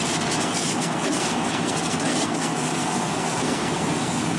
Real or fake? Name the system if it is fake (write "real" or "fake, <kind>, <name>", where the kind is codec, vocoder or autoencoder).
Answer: fake, codec, SNAC